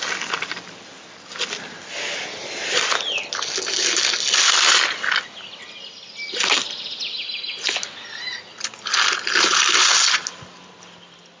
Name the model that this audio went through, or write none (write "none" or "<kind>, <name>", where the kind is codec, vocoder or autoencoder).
none